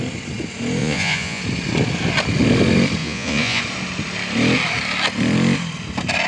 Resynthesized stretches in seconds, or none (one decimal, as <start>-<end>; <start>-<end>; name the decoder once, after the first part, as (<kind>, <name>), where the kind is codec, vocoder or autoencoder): 0.8-1.4 (vocoder, Vocos); 3.0-3.6